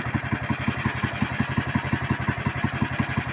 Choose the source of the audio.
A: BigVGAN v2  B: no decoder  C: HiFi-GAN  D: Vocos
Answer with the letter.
B